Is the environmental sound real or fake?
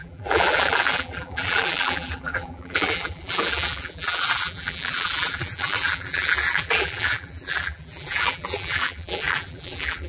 fake